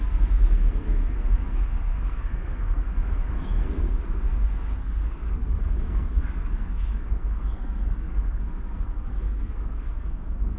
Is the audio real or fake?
fake